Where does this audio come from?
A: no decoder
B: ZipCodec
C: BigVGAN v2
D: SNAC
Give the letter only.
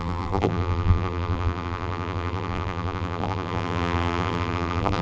C